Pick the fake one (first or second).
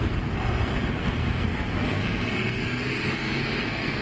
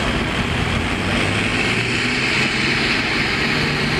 first